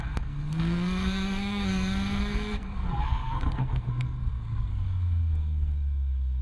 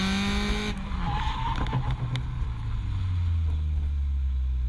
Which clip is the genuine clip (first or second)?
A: second